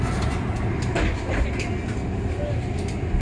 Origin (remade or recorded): recorded